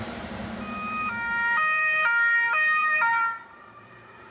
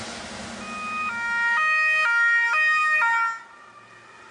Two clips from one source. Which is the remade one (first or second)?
first